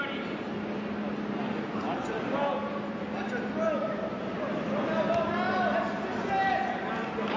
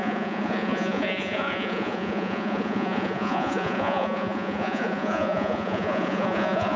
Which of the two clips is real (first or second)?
first